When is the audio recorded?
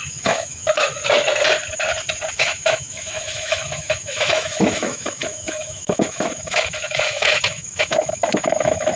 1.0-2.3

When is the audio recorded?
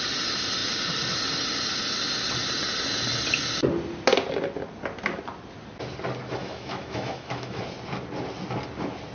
0.0-6.4; 7.6-9.1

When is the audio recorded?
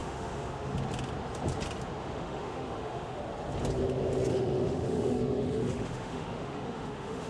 0.7-2.0; 3.2-4.3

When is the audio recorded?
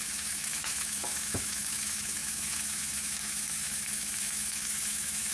none